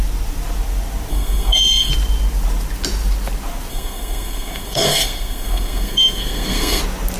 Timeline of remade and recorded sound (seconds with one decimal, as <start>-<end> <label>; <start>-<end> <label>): 0.0-1.1 recorded; 1.1-1.9 remade; 1.9-3.7 recorded; 3.7-6.8 remade; 6.8-7.2 recorded